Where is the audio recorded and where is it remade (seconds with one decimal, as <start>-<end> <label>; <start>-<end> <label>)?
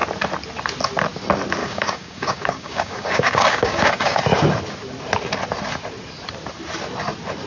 0.0-1.6 recorded; 1.6-4.2 remade; 4.2-7.5 recorded